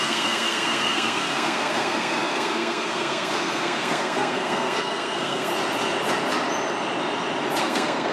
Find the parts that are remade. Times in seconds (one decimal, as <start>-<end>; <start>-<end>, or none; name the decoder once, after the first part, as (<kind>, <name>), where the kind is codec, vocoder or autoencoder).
0.0-5.5 (codec, SNAC); 7.6-8.1